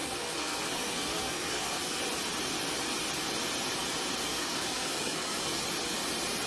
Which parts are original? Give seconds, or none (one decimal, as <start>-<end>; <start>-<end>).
2.0-4.3; 5.6-6.5